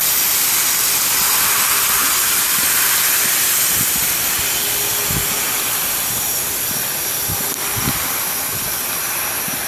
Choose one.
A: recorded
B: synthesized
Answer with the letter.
A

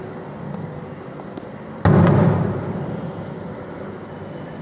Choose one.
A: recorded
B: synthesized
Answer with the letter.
A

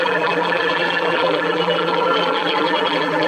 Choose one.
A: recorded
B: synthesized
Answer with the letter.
B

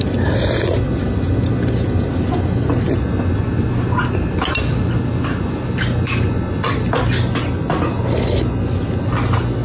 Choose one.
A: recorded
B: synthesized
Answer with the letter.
A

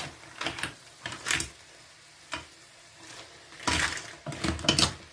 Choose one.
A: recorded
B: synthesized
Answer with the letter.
A